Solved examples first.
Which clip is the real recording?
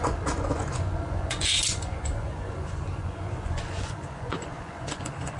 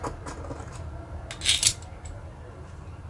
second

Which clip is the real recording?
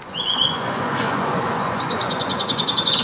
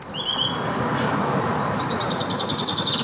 second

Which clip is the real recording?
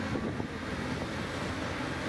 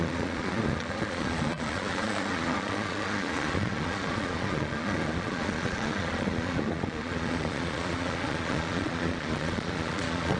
first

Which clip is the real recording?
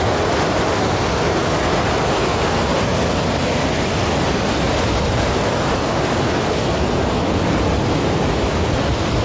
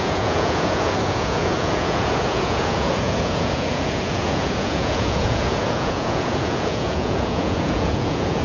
first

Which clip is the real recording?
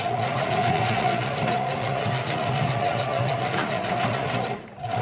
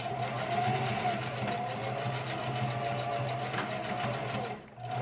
second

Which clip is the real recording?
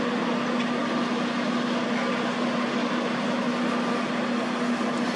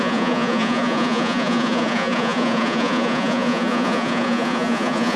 first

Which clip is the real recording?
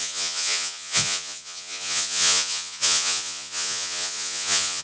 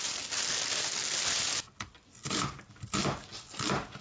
second